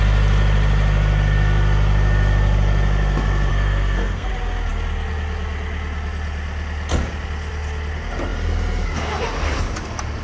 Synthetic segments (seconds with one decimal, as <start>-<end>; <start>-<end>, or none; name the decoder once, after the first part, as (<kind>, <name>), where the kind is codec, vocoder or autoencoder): 3.5-4.3 (codec, SNAC)